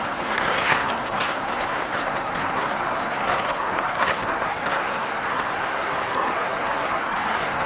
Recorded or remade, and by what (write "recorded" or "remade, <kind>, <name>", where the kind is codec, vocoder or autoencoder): remade, codec, SNAC